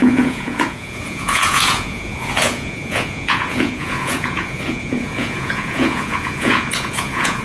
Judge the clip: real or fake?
fake